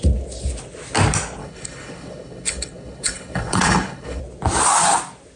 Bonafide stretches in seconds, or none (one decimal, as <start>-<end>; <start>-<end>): 0.0-1.4; 4.2-5.4